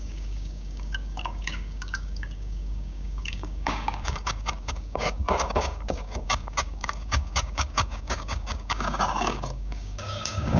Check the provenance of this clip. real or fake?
fake